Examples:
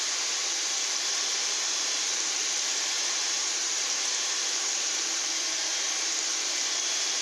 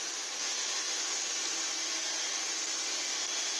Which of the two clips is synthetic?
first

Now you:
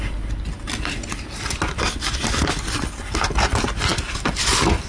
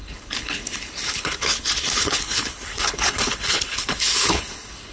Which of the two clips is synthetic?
second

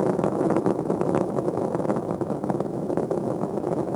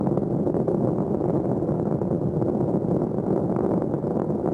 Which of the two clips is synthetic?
first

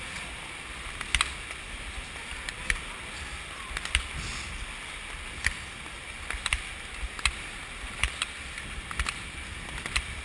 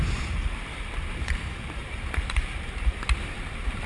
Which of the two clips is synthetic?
second